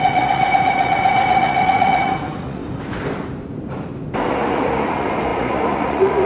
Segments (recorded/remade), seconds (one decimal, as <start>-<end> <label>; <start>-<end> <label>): 0.0-2.6 remade; 2.6-4.3 recorded; 4.3-6.3 remade